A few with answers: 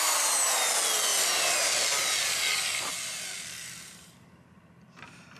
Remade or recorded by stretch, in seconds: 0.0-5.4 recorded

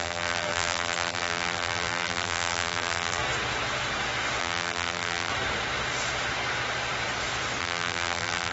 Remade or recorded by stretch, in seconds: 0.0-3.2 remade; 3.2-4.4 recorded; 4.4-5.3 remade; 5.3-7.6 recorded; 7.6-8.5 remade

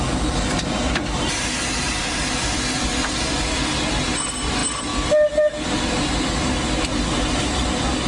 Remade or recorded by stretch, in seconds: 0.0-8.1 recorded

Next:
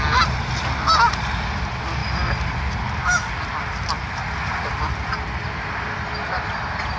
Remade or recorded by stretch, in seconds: 0.0-7.0 recorded

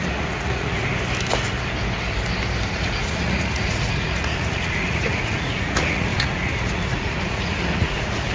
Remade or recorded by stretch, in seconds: 0.0-0.8 remade; 0.8-2.7 recorded; 2.7-8.3 remade